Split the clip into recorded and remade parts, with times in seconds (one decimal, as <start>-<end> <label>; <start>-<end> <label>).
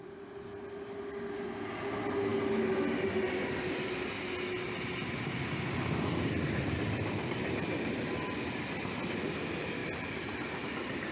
0.0-9.8 recorded; 9.8-10.6 remade; 10.6-11.1 recorded